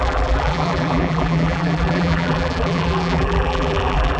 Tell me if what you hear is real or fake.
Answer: fake